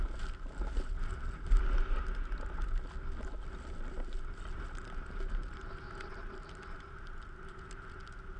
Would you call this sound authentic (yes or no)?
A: yes